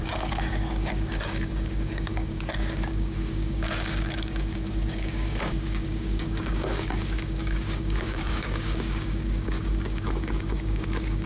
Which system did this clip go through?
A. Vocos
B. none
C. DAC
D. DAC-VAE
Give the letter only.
C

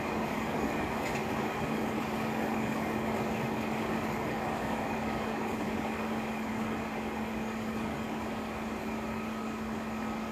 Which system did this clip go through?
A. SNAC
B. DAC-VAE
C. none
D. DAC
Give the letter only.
D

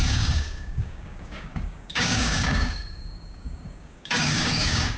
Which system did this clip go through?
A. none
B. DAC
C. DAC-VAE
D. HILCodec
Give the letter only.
B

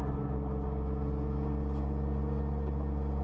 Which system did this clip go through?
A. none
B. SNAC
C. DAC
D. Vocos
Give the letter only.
A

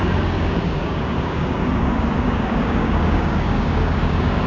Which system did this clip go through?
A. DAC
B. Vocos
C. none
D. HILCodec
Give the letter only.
A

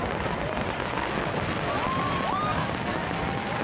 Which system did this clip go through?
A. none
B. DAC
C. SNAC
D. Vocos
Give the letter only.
A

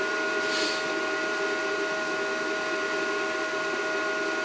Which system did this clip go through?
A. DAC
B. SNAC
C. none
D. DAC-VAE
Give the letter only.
C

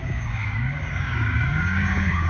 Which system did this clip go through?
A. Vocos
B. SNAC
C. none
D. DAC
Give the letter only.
D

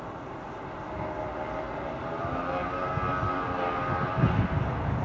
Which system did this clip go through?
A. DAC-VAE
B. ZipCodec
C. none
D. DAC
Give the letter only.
C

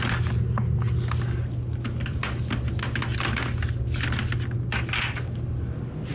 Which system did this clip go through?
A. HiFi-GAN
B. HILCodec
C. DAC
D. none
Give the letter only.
D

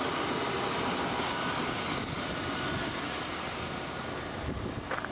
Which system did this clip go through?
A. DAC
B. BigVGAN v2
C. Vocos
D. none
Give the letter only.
D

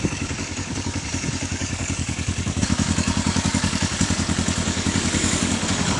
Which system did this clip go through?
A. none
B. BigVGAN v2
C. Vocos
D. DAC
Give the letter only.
D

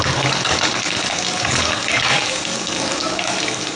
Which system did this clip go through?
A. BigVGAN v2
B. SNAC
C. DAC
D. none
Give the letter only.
C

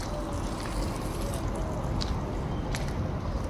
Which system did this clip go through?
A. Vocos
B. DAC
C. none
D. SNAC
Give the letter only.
C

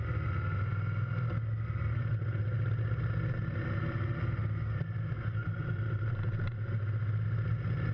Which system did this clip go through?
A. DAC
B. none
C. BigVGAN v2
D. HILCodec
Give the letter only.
B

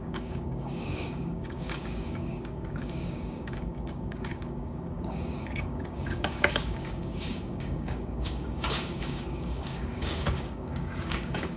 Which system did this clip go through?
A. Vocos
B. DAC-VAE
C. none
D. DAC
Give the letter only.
D